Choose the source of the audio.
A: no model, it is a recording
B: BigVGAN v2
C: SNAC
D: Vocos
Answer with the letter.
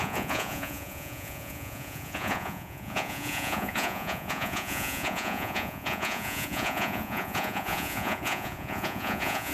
D